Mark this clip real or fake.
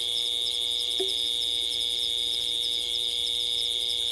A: real